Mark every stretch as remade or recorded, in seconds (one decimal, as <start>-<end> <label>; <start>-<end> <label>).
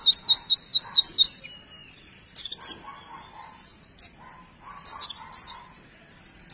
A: 0.0-1.8 recorded; 1.8-2.6 remade; 2.6-6.5 recorded